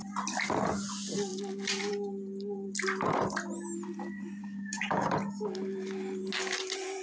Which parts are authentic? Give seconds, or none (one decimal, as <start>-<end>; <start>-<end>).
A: 0.0-4.4; 5.1-7.0